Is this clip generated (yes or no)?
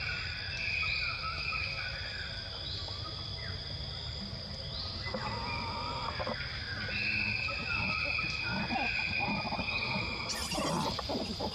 no